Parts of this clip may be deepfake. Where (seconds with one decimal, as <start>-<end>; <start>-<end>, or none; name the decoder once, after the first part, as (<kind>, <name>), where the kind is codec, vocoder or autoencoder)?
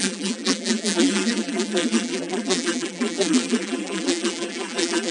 0.0-5.1 (vocoder, BigVGAN v2)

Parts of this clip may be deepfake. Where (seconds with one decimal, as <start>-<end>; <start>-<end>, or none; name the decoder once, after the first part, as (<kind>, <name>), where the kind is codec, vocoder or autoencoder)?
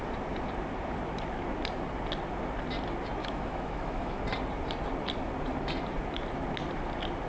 3.2-4.2 (autoencoder, DAC-VAE)